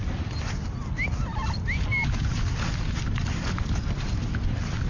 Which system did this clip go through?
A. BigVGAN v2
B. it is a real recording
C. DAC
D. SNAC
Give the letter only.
B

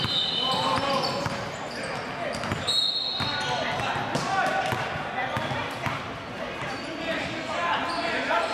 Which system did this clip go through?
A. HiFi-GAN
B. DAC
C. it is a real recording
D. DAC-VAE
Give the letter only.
C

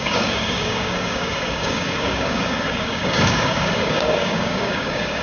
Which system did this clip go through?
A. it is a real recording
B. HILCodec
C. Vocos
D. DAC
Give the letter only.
D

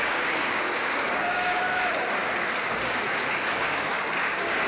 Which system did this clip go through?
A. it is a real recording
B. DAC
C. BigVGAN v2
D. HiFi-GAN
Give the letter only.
B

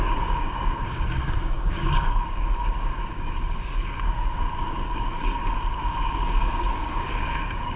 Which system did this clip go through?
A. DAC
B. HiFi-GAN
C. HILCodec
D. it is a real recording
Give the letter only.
A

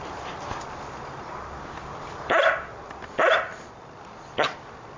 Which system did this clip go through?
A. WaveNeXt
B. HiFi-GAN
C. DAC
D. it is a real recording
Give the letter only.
D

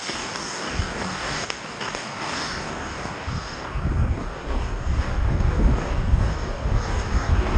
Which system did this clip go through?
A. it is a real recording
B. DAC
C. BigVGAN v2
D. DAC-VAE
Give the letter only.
B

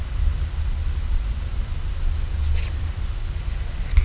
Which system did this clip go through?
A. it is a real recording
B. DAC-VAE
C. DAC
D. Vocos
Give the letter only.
A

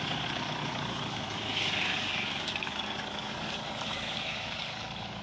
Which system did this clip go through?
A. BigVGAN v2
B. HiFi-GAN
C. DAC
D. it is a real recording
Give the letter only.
C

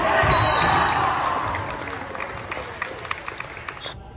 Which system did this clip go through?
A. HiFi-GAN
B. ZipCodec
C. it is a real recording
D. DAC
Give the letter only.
C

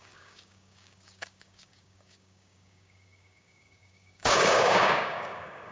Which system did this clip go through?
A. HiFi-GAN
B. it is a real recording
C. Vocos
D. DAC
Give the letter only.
D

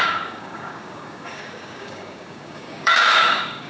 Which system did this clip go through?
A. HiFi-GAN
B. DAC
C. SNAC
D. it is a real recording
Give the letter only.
B